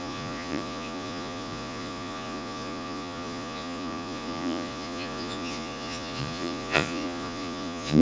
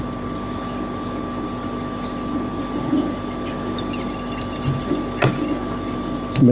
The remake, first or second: first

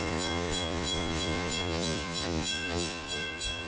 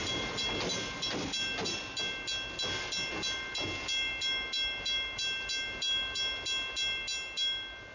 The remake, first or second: first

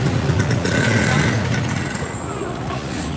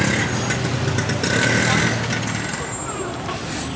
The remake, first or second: first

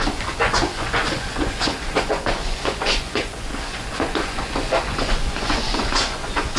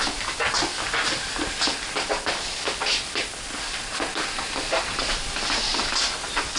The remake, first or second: first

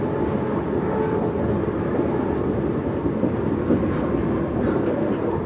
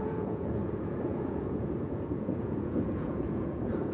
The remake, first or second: second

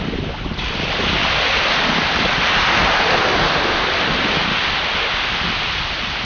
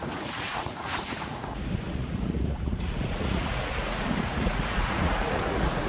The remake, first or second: second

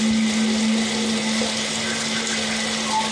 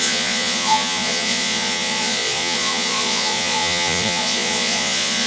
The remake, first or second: second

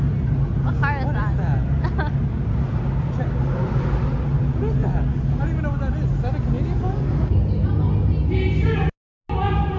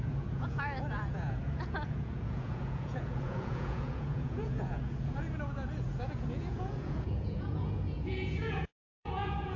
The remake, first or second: second